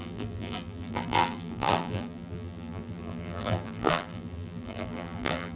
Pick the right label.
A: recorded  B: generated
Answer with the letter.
B